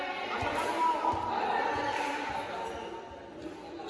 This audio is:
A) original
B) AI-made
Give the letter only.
A